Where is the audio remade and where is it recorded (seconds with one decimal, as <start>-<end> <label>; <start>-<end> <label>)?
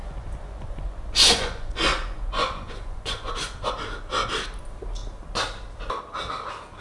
0.0-3.3 remade; 3.3-6.8 recorded